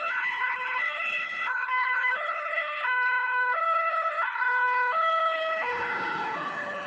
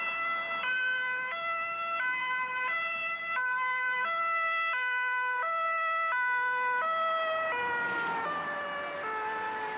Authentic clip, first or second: second